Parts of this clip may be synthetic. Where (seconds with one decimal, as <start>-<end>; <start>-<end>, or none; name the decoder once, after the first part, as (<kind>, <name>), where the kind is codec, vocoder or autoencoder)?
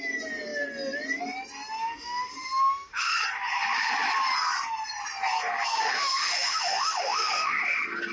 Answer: 1.8-3.1 (autoencoder, DAC-VAE); 5.8-7.6